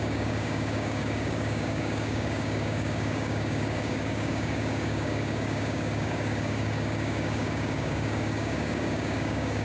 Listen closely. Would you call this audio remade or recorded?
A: remade